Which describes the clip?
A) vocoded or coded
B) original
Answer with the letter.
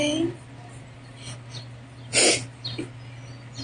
B